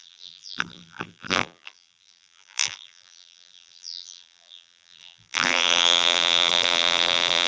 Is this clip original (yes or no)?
no